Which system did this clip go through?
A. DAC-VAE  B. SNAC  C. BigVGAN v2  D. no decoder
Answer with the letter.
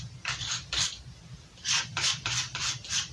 C